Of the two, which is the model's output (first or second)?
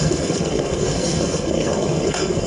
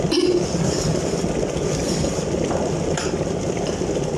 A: first